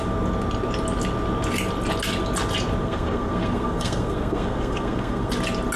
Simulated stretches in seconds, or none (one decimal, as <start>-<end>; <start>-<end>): 2.8-5.3